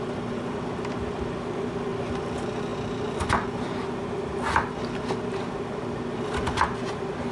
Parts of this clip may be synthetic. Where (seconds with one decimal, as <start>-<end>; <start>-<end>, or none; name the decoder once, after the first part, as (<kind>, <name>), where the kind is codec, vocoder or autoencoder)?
none